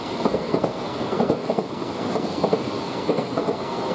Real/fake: fake